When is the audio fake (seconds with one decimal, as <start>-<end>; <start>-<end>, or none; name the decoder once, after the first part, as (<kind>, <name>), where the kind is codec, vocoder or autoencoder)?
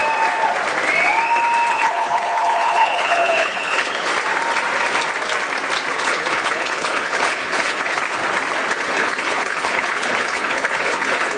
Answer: 1.7-4.1 (codec, HILCodec); 5.9-8.2; 8.7-11.4